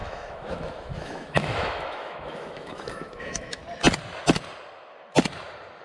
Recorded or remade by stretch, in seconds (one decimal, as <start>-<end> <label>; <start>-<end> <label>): 0.0-3.6 remade; 3.6-5.8 recorded